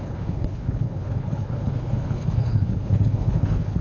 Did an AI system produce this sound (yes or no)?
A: yes